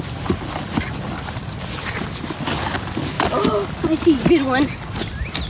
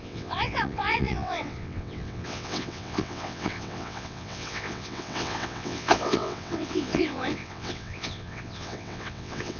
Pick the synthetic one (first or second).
second